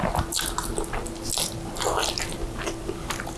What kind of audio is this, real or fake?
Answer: real